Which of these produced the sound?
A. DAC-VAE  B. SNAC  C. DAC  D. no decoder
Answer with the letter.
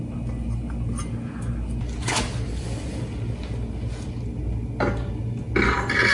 D